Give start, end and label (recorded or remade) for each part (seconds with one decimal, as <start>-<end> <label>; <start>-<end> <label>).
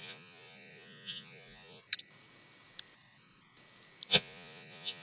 0.0-1.8 remade; 1.8-4.1 recorded; 4.1-5.0 remade